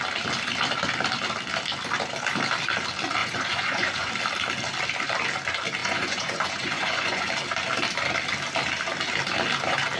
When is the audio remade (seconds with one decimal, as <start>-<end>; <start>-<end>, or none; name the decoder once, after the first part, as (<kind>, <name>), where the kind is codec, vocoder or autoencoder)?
3.2-4.1 (vocoder, Vocos); 5.8-7.2